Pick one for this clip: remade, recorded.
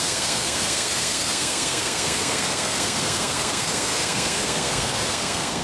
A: remade